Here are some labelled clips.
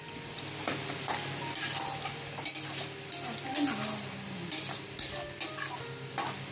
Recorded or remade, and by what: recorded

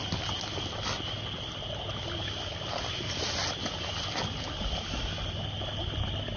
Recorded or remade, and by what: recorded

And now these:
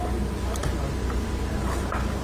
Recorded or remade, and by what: recorded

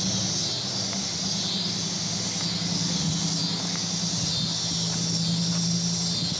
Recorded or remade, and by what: recorded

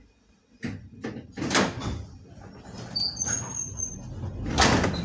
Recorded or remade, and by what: recorded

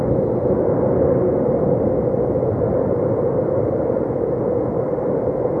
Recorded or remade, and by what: recorded